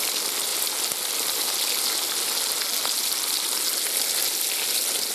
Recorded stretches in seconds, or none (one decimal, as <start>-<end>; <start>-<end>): 0.0-5.1